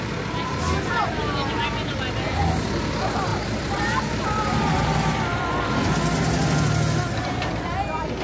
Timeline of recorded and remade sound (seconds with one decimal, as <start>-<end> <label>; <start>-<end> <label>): 0.0-3.3 recorded; 3.3-4.0 remade; 4.0-8.2 recorded